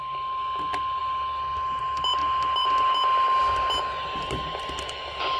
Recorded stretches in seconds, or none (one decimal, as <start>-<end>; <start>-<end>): 0.0-5.4